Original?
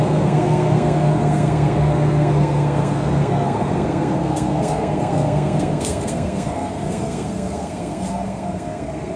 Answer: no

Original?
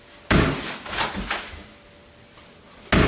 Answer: yes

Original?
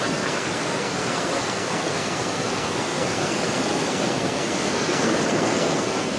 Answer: no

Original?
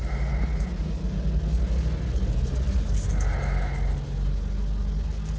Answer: yes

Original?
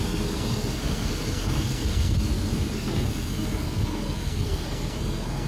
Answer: no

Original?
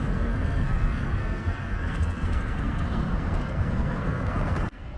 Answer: no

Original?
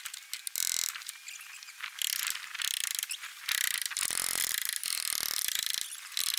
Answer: yes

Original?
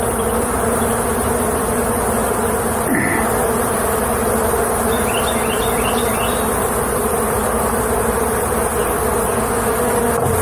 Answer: yes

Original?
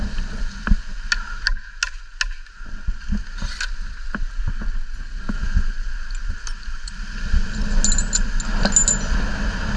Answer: yes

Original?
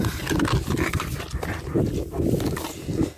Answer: yes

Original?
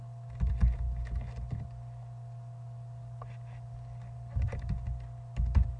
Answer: yes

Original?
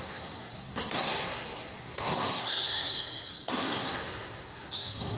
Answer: no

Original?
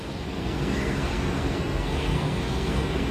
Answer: no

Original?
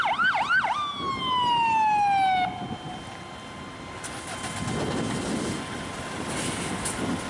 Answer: yes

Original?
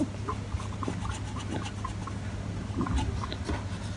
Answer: yes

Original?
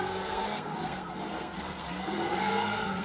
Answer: no